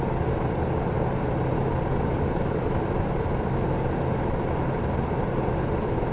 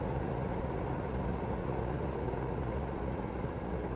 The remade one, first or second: second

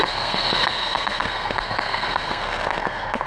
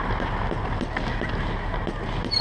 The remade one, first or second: first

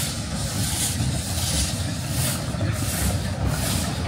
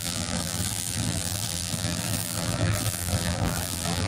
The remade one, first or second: second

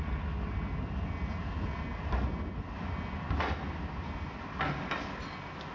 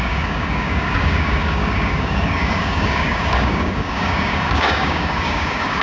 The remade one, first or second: second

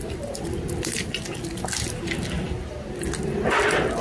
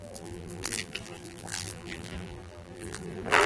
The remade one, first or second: second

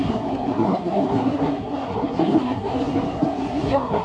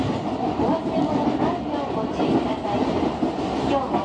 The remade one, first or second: first